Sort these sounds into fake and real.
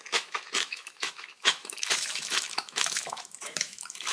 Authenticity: fake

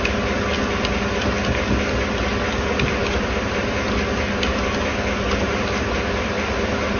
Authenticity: real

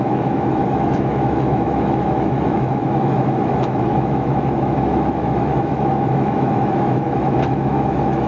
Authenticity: fake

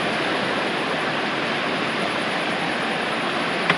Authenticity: real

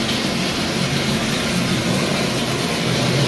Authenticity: real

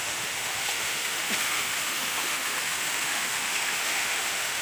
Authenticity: fake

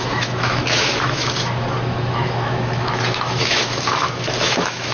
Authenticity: fake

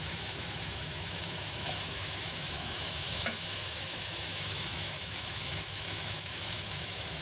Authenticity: fake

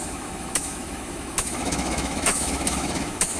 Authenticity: fake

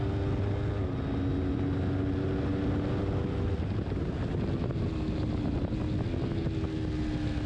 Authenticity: real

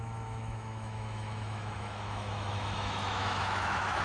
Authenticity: fake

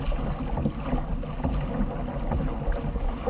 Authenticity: real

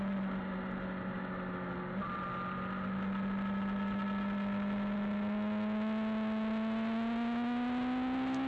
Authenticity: real